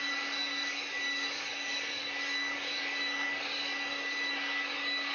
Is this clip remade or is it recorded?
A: remade